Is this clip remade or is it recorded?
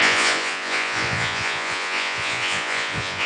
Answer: remade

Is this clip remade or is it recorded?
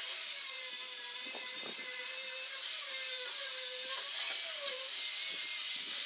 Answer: recorded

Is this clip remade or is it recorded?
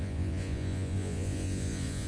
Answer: remade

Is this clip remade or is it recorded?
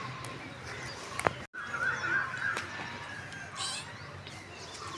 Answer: recorded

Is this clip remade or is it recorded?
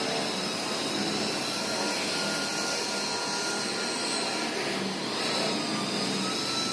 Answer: recorded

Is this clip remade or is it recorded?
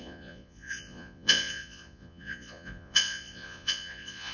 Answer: remade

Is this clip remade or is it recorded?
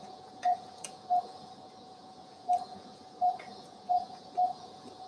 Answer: remade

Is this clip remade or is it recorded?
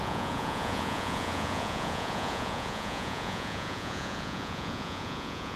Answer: remade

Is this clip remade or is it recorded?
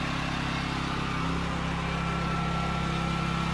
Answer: recorded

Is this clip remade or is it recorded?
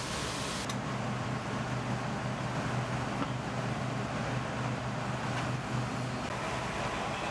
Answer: recorded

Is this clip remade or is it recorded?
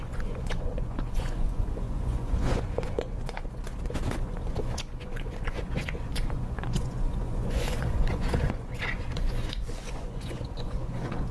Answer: remade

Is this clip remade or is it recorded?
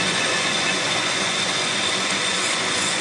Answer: remade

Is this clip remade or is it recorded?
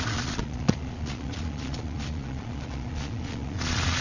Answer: remade